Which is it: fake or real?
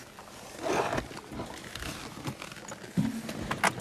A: real